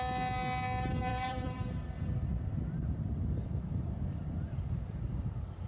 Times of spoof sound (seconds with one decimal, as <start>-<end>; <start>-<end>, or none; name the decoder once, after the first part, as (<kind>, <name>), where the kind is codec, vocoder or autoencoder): 1.1-4.5 (vocoder, BigVGAN v2)